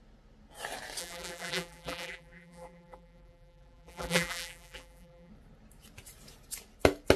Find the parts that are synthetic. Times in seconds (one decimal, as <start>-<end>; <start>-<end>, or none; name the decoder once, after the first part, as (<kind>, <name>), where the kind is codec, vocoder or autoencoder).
1.0-5.3 (vocoder, BigVGAN v2)